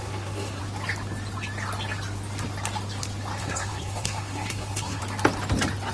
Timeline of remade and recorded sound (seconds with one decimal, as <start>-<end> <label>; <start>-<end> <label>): 0.0-0.6 remade; 0.6-3.4 recorded; 3.4-5.0 remade; 5.0-5.9 recorded